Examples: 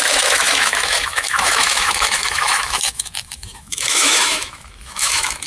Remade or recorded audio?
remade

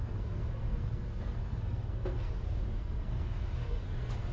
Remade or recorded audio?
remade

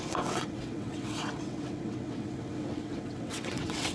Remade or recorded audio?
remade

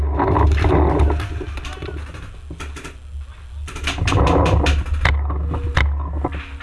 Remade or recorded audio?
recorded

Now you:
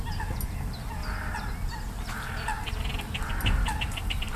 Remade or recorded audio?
recorded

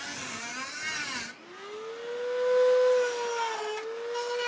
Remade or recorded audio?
recorded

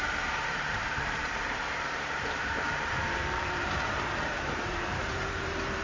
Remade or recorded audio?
remade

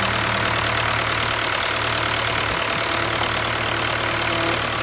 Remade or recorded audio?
recorded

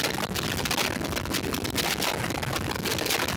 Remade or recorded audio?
recorded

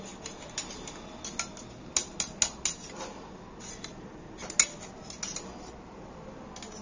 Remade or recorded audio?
recorded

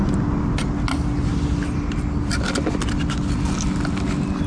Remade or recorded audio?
recorded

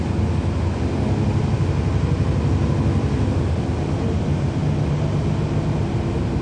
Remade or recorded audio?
recorded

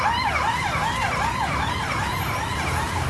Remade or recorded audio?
recorded